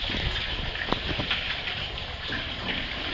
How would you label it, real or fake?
real